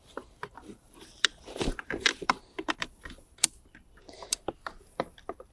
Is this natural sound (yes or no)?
no